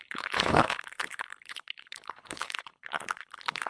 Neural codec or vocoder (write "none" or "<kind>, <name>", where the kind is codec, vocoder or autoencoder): codec, HILCodec